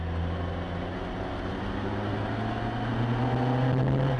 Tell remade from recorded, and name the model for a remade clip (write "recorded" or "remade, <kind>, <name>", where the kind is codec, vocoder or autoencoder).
recorded